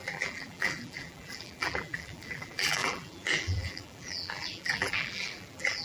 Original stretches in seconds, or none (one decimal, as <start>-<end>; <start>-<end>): none